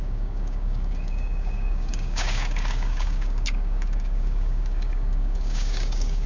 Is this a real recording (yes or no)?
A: no